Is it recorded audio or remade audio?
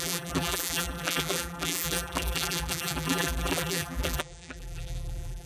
remade